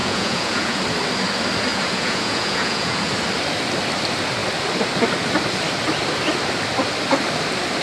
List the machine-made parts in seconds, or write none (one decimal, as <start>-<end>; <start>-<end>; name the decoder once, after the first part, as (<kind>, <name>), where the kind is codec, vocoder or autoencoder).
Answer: 0.0-0.8 (vocoder, Vocos); 1.7-3.1